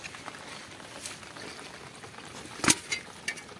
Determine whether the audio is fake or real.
real